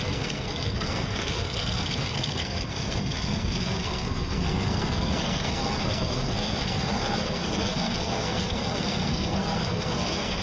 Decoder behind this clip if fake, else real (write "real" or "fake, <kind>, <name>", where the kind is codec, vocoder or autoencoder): fake, codec, SNAC